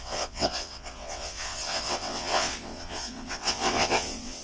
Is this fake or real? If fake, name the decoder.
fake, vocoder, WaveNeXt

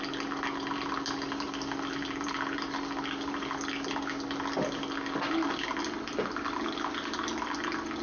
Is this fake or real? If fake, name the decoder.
real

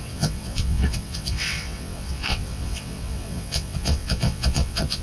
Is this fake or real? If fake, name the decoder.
fake, vocoder, WaveNeXt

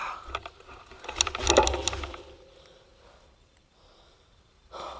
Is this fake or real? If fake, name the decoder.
real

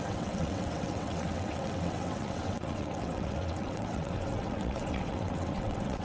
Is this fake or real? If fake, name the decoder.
fake, vocoder, WaveNeXt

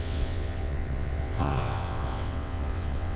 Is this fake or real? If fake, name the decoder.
fake, vocoder, WaveNeXt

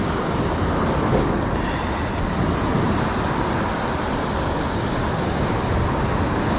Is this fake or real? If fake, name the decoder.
real